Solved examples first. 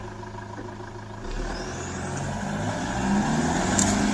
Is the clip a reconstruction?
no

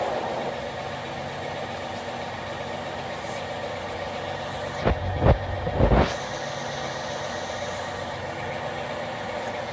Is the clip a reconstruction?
no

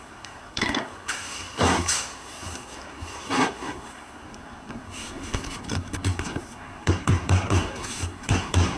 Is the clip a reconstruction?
yes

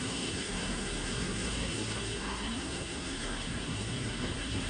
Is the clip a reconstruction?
yes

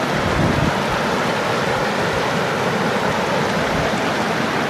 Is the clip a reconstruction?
no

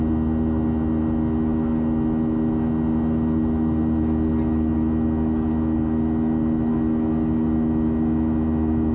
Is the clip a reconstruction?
no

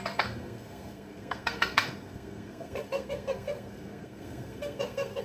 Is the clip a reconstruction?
yes